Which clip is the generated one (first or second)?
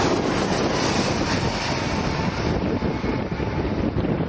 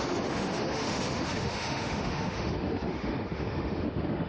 second